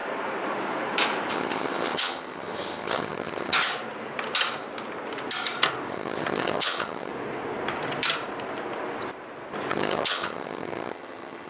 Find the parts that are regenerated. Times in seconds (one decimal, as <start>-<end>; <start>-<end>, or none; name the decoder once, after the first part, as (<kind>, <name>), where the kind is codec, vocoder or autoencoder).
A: 1.3-3.7 (vocoder, HiFi-GAN); 5.9-7.1; 9.7-11.5